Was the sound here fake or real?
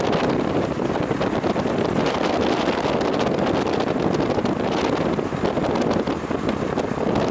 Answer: real